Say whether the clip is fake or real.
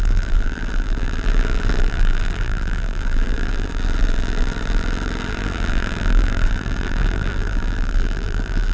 fake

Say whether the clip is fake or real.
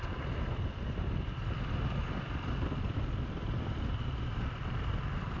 real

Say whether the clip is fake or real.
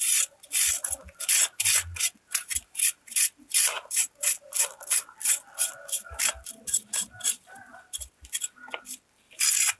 fake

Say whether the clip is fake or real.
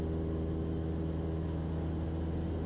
real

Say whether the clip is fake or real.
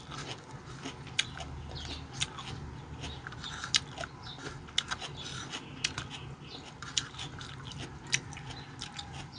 real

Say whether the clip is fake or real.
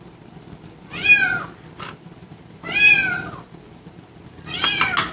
real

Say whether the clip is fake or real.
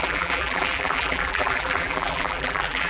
fake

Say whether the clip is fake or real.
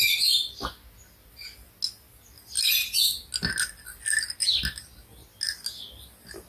real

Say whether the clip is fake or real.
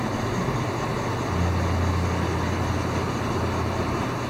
real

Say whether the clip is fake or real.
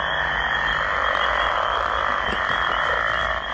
real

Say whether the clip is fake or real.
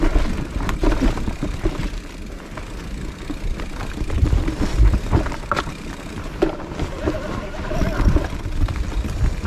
real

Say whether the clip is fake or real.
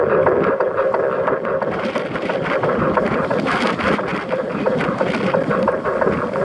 fake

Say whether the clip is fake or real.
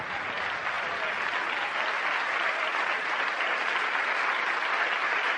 real